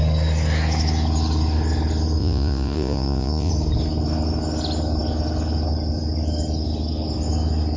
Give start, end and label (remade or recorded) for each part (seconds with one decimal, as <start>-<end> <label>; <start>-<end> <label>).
0.0-2.2 recorded; 2.2-3.5 remade; 3.5-7.8 recorded